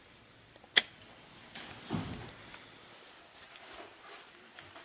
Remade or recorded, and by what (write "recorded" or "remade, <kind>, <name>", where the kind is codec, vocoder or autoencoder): recorded